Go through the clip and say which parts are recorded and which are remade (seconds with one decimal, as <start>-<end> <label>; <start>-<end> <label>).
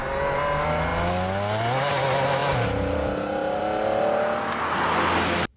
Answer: 0.0-5.6 recorded